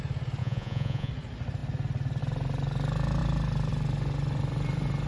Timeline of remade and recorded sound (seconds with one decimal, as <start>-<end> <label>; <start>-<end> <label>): 0.0-0.4 recorded; 0.4-1.1 remade; 1.1-5.1 recorded